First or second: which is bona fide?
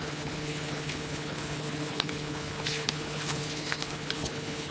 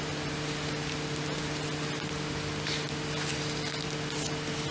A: second